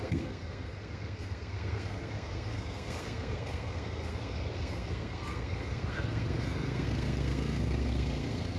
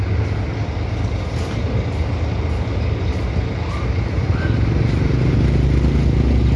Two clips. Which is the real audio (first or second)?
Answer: second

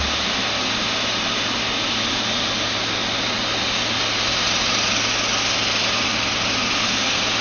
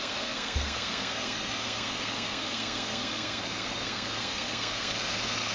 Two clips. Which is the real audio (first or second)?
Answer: first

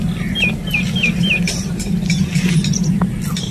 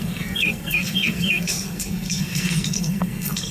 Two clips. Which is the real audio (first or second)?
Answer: first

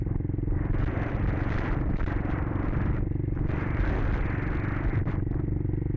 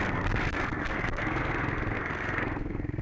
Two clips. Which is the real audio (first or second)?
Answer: first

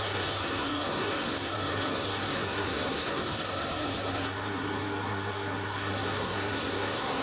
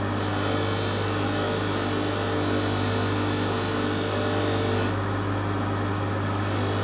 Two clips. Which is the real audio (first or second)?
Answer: second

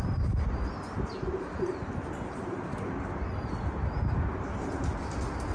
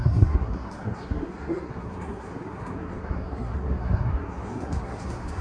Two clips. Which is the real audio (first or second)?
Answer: first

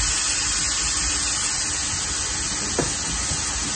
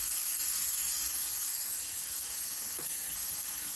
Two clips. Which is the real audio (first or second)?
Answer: first